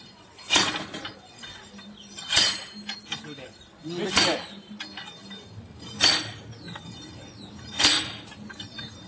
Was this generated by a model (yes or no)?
no